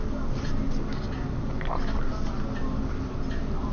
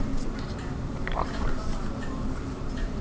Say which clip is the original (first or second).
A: first